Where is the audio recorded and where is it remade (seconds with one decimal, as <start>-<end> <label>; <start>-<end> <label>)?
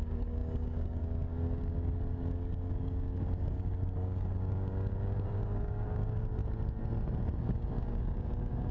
0.0-6.4 remade; 6.4-7.4 recorded; 7.4-8.7 remade